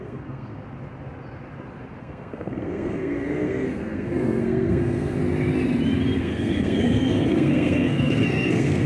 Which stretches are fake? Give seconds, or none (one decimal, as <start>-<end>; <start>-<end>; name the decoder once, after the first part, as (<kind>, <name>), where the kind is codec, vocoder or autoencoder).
0.0-0.6 (codec, SNAC); 2.0-5.2; 6.2-8.9